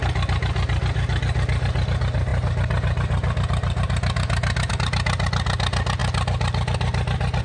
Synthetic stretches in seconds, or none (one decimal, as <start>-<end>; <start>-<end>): none